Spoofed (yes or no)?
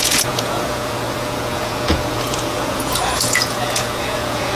yes